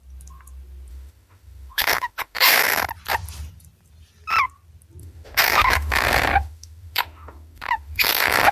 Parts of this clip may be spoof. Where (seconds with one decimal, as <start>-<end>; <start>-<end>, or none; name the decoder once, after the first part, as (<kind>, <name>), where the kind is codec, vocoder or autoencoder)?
0.9-2.6 (autoencoder, DAC-VAE); 5.0-8.5